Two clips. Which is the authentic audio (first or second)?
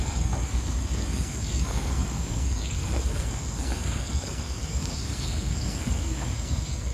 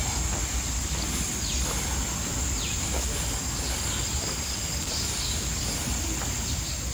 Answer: second